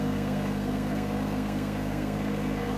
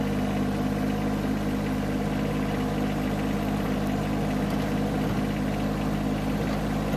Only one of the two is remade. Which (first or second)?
first